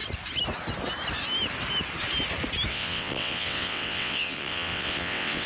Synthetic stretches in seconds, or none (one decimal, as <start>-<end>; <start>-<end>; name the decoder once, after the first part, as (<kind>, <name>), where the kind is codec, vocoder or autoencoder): 2.7-5.5 (vocoder, WaveNeXt)